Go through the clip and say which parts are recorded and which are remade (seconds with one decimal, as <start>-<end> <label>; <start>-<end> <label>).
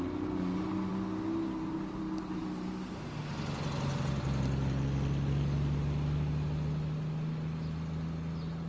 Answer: 0.0-8.7 recorded